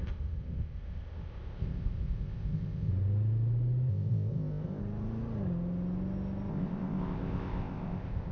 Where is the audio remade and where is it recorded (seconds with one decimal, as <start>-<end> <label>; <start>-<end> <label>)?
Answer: 0.0-2.9 remade; 2.9-3.9 recorded; 3.9-4.8 remade; 4.8-6.5 recorded; 6.5-8.3 remade